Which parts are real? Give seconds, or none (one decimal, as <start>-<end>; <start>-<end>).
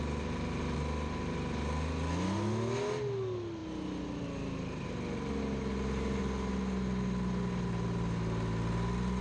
0.0-9.2